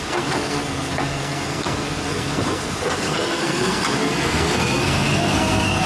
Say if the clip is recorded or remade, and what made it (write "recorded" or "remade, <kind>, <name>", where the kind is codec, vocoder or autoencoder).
remade, codec, SNAC